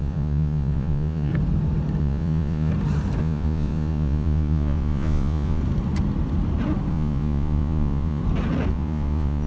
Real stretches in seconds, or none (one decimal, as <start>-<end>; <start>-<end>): 1.3-2.0; 2.7-3.2; 5.6-6.9; 8.2-8.7